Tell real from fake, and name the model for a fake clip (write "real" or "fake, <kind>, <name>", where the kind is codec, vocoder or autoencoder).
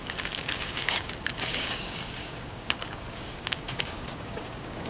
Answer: fake, codec, DAC